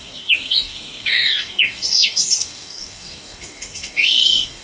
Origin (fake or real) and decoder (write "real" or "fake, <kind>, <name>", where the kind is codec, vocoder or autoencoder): fake, codec, DAC